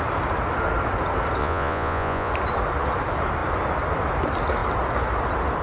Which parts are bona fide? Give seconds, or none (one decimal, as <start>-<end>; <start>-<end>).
0.0-1.4; 2.3-5.6